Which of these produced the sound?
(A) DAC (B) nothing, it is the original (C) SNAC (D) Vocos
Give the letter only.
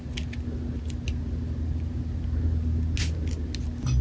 B